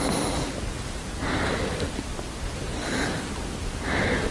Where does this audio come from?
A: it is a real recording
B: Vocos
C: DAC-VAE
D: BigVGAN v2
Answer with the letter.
A